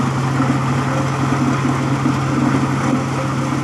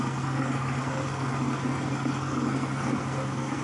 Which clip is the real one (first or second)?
first